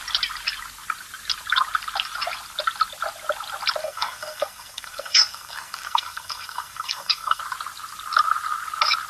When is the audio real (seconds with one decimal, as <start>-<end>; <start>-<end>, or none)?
0.0-3.8; 7.4-9.1